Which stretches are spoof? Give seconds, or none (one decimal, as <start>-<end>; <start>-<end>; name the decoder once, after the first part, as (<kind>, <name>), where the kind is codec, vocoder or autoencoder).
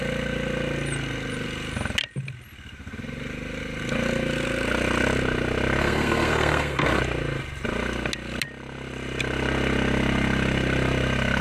5.8-7.0 (codec, SNAC)